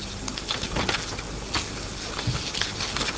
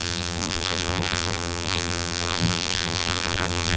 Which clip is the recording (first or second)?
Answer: first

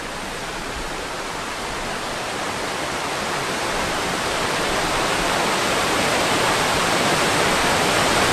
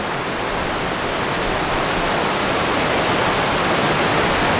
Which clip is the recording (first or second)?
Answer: second